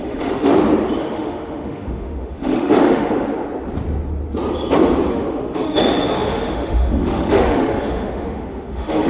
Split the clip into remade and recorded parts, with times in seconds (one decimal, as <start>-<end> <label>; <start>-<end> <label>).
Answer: 0.0-0.5 remade; 0.5-1.0 recorded; 1.0-3.3 remade; 3.3-5.1 recorded; 5.1-9.1 remade